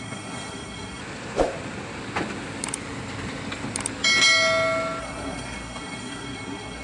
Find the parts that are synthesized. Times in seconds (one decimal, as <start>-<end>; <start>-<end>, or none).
0.0-1.0; 5.0-6.8